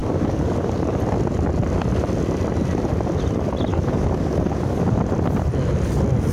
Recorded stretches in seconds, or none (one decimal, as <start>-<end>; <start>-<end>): 1.0-3.7; 5.0-6.3